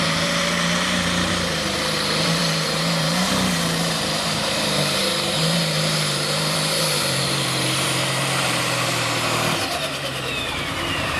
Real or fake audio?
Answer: fake